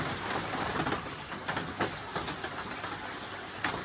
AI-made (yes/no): no